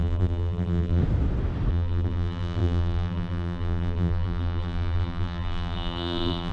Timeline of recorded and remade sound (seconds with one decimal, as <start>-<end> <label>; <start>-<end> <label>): 0.0-1.0 remade; 1.0-1.7 recorded; 1.7-6.5 remade